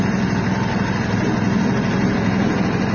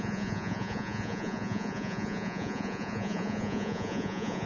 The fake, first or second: second